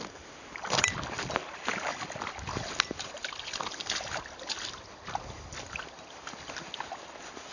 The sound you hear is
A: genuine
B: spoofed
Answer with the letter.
A